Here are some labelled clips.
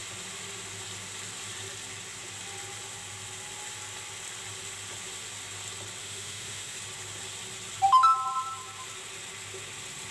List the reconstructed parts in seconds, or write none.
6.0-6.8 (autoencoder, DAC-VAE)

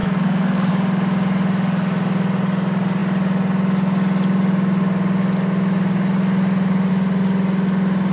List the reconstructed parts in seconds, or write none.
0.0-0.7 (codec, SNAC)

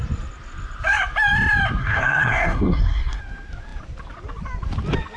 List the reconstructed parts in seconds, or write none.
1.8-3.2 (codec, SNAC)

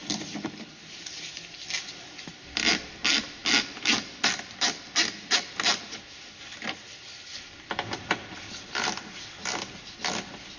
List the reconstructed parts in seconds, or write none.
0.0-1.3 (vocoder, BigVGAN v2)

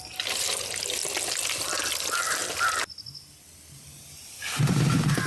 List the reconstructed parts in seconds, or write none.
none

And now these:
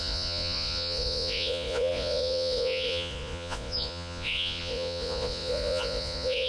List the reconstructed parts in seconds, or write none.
0.0-6.5 (vocoder, Vocos)

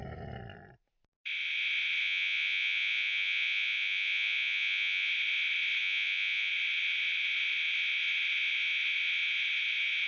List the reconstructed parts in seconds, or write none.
2.0-5.1 (vocoder, Vocos); 5.8-6.5

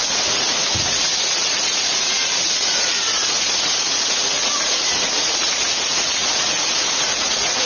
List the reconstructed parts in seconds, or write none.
0.0-7.7 (vocoder, Vocos)